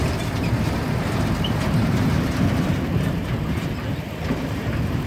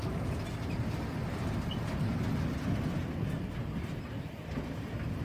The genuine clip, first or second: second